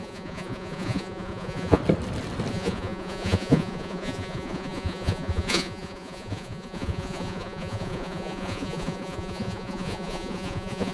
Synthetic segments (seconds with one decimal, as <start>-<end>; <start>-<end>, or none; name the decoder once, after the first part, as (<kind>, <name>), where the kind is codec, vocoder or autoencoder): 0.0-1.8 (vocoder, Vocos); 2.5-10.9